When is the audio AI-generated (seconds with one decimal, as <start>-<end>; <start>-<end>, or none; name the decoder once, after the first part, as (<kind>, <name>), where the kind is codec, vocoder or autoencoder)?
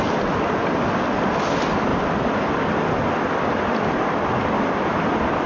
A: none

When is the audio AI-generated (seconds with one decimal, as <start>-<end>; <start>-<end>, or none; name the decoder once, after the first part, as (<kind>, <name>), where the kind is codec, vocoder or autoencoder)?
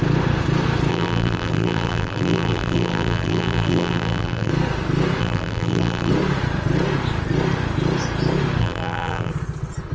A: 0.9-4.5 (vocoder, BigVGAN v2); 5.2-6.1; 8.6-9.3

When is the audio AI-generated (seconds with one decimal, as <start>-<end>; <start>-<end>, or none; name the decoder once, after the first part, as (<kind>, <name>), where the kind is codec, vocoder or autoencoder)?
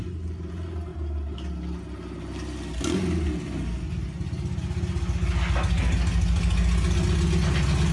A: none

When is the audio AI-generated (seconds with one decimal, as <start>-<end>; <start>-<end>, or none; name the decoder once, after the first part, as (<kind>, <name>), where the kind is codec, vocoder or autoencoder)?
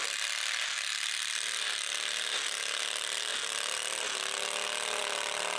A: none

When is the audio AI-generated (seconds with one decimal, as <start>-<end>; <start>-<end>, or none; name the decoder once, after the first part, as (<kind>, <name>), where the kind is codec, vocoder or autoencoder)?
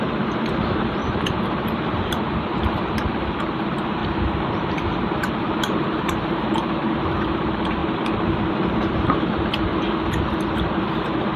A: 0.0-4.0 (vocoder, BigVGAN v2); 4.6-7.8; 8.5-9.7; 10.7-11.4